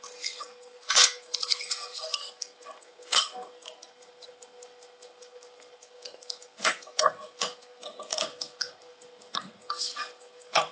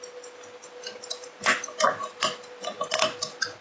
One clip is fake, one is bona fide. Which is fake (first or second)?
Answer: first